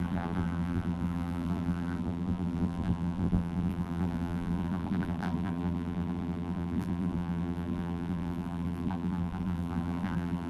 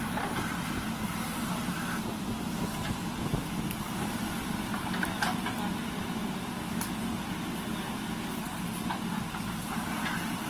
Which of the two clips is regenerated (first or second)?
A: first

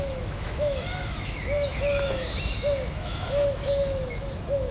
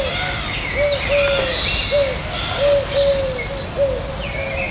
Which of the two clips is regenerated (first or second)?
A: first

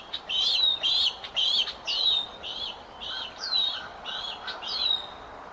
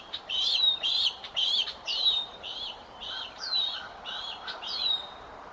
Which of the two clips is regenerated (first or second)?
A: second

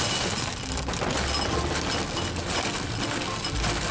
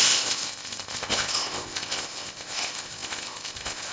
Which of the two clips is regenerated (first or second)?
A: second